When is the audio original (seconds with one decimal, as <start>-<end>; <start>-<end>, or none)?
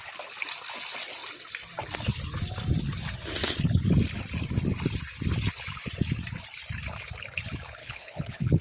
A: 0.0-7.8